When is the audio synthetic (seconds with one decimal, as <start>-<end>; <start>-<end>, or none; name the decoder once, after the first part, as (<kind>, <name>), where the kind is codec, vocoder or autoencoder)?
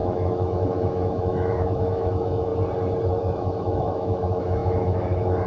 0.0-2.5 (autoencoder, DAC-VAE); 3.2-5.5